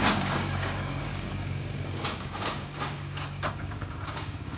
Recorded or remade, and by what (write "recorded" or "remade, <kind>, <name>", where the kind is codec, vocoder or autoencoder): remade, codec, DAC